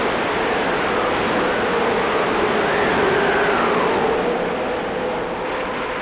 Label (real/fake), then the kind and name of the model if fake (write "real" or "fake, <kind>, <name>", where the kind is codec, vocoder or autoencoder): real